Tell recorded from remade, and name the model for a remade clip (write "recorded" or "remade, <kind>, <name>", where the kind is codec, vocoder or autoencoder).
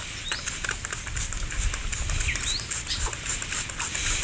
recorded